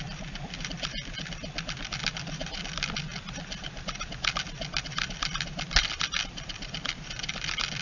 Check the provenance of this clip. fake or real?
real